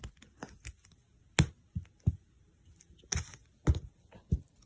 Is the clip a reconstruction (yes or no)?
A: no